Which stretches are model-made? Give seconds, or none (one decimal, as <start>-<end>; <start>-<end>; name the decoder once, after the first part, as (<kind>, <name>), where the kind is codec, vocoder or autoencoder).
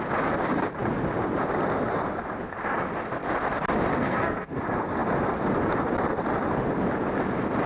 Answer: 3.9-4.6 (codec, SNAC)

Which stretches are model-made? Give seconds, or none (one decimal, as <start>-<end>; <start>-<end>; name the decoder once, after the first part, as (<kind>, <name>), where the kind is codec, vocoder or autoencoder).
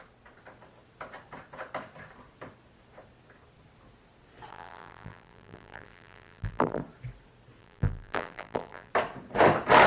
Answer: 4.5-6.8 (vocoder, BigVGAN v2); 7.6-8.9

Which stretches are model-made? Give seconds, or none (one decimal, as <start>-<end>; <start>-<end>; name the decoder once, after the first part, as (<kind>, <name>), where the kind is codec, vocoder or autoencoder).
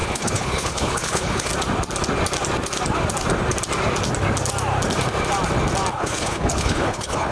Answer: 0.0-1.5 (codec, HILCodec); 5.9-7.3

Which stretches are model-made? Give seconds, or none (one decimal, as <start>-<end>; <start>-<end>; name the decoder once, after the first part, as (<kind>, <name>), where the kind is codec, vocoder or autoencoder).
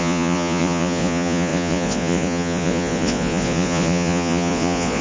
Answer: 0.0-5.0 (vocoder, Vocos)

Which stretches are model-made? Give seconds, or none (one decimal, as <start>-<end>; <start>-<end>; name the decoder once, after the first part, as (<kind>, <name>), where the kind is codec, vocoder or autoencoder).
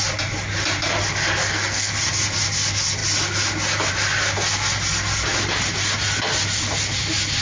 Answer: 1.4-1.9 (codec, SNAC)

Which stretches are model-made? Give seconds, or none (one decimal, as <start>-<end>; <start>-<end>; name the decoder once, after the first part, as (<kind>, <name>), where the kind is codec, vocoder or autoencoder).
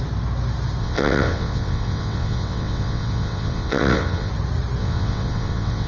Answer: 0.8-4.3 (vocoder, WaveNeXt); 4.8-5.9